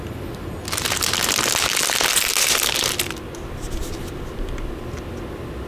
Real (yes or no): yes